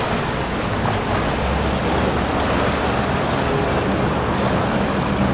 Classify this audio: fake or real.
real